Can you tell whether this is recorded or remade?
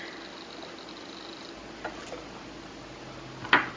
recorded